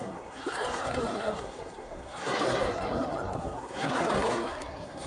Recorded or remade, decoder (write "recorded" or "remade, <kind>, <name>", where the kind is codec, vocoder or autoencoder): remade, codec, SNAC